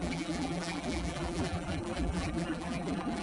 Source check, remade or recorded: remade